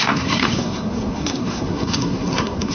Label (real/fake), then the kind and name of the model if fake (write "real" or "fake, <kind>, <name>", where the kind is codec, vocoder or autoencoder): fake, codec, SNAC